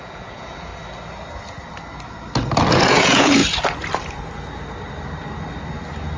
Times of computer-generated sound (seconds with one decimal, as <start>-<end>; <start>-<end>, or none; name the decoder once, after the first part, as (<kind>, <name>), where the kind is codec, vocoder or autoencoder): 0.0-0.7 (vocoder, Vocos); 2.7-3.4